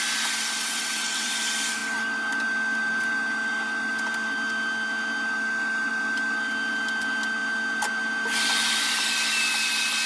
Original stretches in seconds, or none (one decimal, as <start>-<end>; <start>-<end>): 0.0-0.6; 1.3-10.1